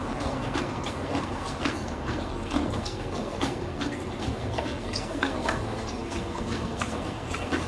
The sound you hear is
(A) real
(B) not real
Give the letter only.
B